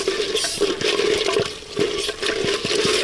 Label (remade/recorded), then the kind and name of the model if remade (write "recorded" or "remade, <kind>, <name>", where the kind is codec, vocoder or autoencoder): recorded